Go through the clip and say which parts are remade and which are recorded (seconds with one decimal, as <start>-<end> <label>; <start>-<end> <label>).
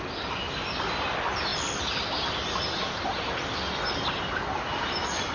0.0-5.3 recorded